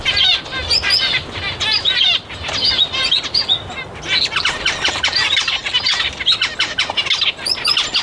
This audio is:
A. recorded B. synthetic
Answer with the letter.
A